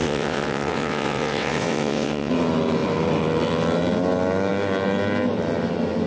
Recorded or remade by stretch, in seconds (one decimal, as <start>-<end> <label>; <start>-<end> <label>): 0.0-2.3 remade; 2.3-6.1 recorded